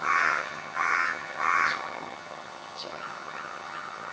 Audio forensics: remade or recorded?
remade